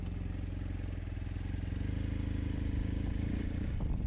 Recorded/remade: recorded